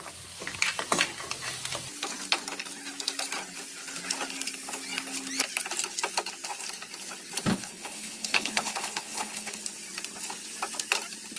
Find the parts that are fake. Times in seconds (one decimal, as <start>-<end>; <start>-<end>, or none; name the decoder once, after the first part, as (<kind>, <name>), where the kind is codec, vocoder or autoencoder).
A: 7.5-9.6 (codec, HILCodec)